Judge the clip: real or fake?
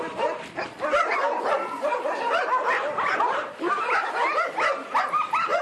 real